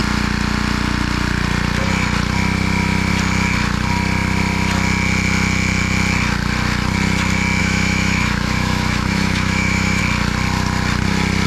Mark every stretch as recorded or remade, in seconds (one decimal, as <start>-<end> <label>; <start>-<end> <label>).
0.0-7.6 recorded; 7.6-10.0 remade; 10.0-11.5 recorded